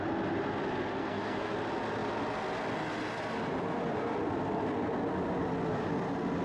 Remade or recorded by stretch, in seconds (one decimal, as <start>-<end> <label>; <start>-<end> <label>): 0.0-1.0 recorded; 1.0-1.5 remade; 1.5-6.4 recorded